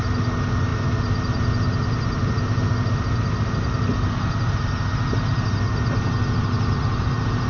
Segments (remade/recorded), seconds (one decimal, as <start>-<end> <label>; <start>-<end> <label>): 0.0-7.5 recorded